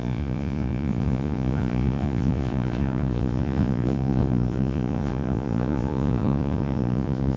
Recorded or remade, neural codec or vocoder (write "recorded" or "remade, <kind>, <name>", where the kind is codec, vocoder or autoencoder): remade, vocoder, Vocos